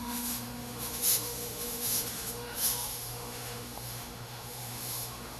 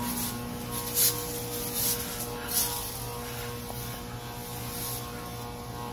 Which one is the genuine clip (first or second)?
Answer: second